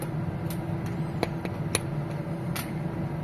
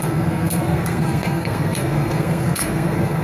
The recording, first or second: first